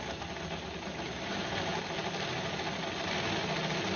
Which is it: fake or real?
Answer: real